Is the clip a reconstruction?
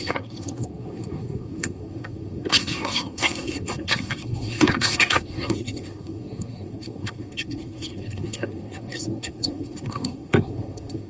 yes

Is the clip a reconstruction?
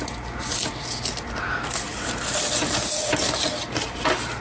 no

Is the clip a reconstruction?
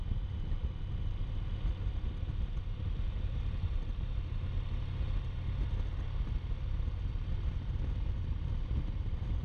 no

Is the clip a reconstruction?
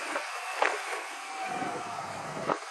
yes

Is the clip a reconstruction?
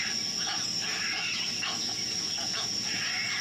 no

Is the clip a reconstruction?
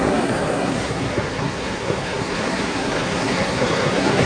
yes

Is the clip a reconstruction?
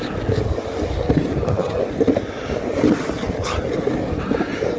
no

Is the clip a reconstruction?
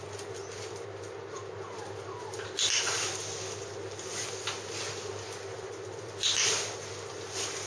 no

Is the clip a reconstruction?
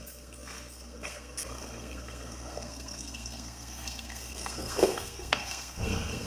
yes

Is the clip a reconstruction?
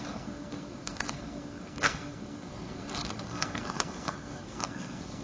yes